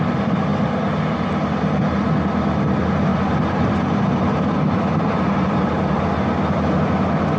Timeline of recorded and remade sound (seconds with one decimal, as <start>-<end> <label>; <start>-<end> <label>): 0.0-3.1 recorded; 3.1-6.1 remade; 6.1-7.4 recorded